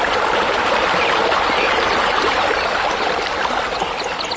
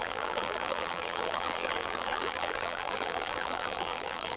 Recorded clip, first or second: first